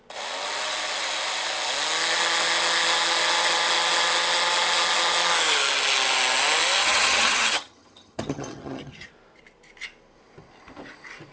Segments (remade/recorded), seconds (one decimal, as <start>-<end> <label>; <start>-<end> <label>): 0.0-6.8 recorded; 6.8-9.1 remade; 9.1-11.3 recorded